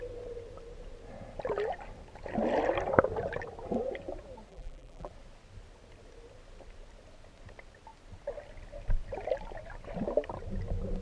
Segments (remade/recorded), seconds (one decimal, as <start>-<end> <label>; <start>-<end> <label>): 0.0-4.5 recorded; 4.5-5.1 remade; 5.1-11.0 recorded